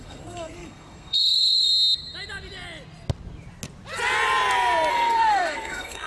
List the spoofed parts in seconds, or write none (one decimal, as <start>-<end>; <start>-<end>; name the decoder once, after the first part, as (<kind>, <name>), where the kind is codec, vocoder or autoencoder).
0.0-1.7 (codec, SNAC); 4.9-6.1